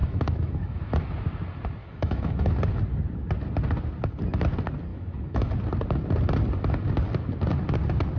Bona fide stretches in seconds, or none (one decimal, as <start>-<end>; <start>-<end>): 0.9-1.8; 2.5-4.9; 5.5-8.2